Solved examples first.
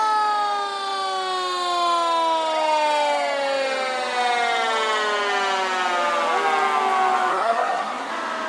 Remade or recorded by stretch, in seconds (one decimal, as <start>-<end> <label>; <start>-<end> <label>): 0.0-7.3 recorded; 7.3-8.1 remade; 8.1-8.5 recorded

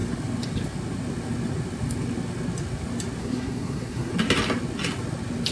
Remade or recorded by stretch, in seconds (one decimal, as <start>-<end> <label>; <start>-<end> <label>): 0.0-3.2 recorded; 3.2-4.1 remade; 4.1-5.5 recorded

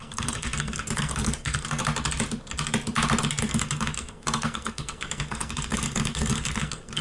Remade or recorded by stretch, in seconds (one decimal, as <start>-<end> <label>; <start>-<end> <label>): 0.0-1.8 remade; 1.8-3.3 recorded; 3.3-7.0 remade

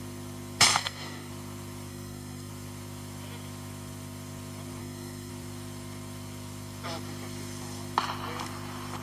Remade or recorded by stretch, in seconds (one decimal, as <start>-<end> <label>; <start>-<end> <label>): 0.0-0.7 recorded; 0.7-1.3 remade; 1.3-1.9 recorded; 1.9-2.5 remade; 2.5-4.8 recorded; 4.8-5.3 remade; 5.3-9.0 recorded